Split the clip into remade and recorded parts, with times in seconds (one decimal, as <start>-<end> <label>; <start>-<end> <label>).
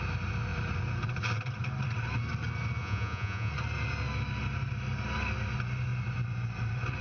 0.0-2.8 recorded; 2.8-3.5 remade; 3.5-7.0 recorded